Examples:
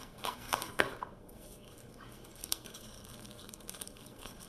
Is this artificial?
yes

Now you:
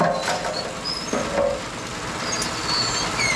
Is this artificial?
no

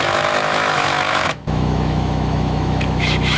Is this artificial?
yes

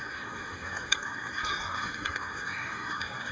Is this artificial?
yes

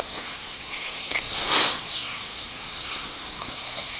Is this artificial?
yes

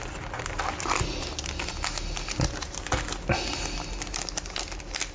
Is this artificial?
no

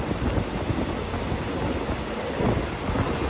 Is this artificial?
no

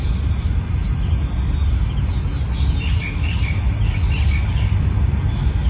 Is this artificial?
no